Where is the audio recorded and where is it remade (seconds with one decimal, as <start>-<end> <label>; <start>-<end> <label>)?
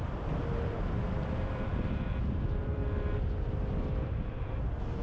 0.0-5.0 remade